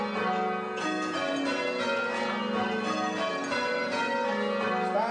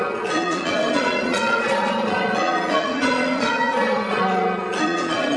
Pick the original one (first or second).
first